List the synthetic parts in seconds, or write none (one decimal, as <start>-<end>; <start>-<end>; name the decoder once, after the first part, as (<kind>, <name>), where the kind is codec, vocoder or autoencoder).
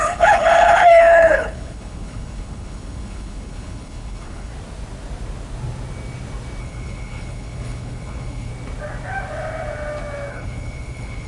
0.0-4.5 (codec, HILCodec); 6.6-8.5; 10.3-11.3